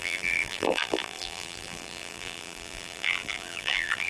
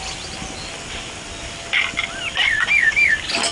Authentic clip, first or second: second